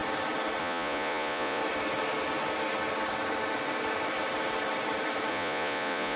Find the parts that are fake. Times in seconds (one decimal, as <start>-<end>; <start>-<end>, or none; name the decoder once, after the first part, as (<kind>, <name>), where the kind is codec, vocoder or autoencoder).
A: 0.6-1.6 (vocoder, Vocos); 5.3-6.2